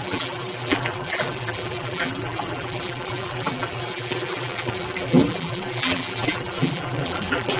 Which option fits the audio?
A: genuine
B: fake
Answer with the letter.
B